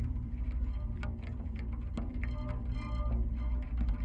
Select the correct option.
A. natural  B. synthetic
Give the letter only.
A